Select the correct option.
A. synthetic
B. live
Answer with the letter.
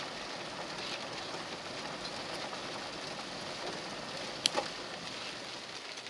B